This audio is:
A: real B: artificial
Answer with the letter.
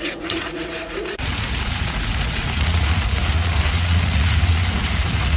B